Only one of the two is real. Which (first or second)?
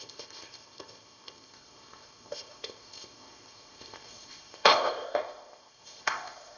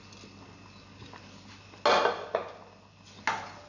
second